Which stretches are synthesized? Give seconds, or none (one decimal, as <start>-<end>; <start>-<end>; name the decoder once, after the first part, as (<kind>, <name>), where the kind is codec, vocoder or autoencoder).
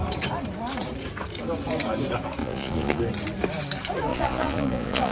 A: 2.4-3.0 (vocoder, Vocos); 4.1-5.1